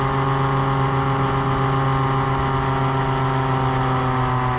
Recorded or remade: recorded